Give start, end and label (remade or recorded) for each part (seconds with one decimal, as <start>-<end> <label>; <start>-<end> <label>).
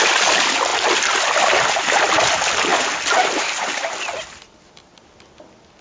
0.0-5.8 recorded